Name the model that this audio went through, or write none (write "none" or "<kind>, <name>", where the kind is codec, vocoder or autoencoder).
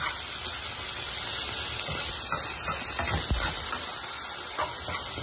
none